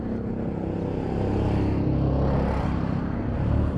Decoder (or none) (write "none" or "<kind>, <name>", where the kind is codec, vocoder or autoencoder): none